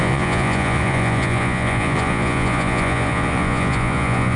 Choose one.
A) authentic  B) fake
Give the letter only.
B